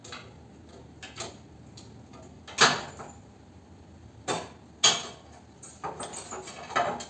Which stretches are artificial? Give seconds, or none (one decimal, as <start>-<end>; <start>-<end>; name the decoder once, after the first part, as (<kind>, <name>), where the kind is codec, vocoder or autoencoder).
none